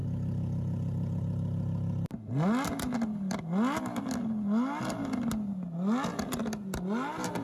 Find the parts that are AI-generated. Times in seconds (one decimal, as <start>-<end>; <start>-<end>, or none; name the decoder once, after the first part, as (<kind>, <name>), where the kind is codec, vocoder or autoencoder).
0.0-1.2 (vocoder, Vocos)